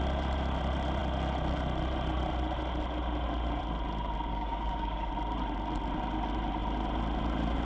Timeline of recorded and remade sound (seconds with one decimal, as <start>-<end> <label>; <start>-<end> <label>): 0.0-4.3 recorded; 4.3-5.1 remade; 5.1-7.6 recorded